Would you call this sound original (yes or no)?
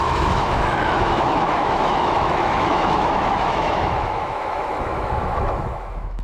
no